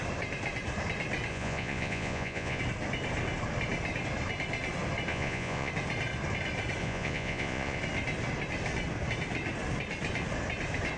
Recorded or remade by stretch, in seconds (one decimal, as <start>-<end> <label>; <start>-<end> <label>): 0.0-1.3 recorded; 1.3-2.6 remade; 2.6-5.1 recorded; 5.1-5.7 remade; 5.7-6.8 recorded; 6.8-7.8 remade; 7.8-11.0 recorded